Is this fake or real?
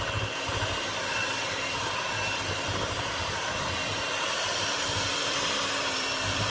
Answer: fake